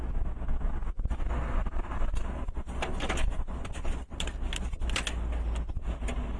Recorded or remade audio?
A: recorded